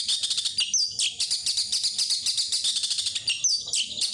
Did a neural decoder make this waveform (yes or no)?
no